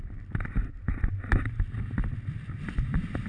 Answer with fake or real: real